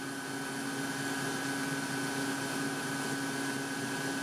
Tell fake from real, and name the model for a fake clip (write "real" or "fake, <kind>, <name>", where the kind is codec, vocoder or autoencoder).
real